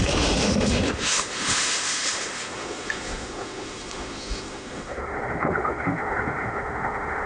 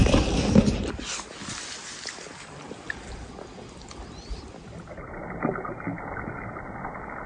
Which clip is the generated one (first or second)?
first